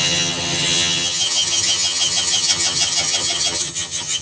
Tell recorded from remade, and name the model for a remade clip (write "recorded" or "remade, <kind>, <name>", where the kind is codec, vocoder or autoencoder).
remade, vocoder, HiFi-GAN